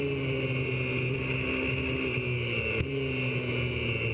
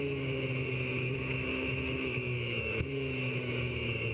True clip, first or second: first